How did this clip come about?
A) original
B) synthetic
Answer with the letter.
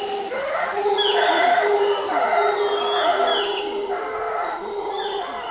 A